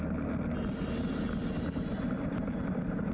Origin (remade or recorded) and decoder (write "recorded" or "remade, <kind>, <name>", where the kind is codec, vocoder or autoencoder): recorded